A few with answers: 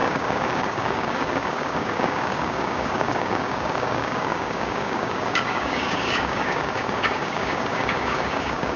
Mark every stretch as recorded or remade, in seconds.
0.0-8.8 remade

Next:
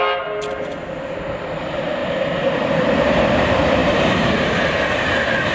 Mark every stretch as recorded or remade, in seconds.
0.0-2.0 recorded; 2.0-3.2 remade; 3.2-3.8 recorded; 3.8-4.3 remade; 4.3-5.5 recorded

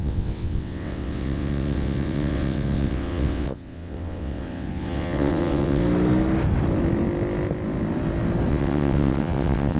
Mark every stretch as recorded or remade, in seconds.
0.0-5.8 remade; 5.8-8.5 recorded; 8.5-9.8 remade

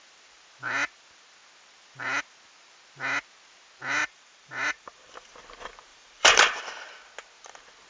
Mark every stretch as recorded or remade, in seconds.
0.0-4.0 recorded; 4.0-5.1 remade; 5.1-5.9 recorded; 5.9-6.6 remade; 6.6-7.9 recorded